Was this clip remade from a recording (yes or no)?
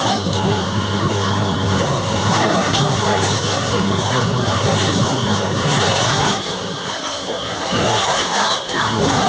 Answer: yes